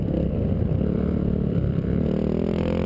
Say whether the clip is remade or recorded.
recorded